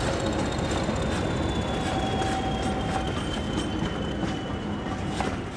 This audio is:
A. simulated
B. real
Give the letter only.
B